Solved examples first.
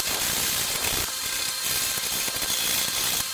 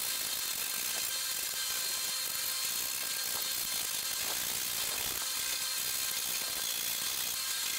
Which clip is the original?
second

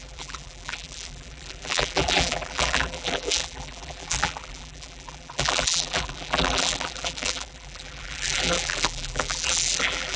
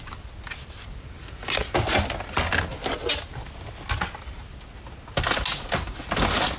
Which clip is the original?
second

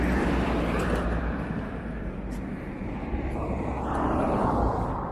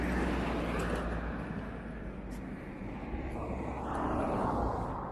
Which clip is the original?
second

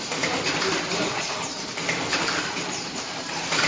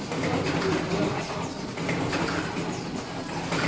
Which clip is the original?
second